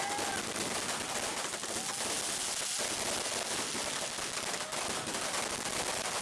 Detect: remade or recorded recorded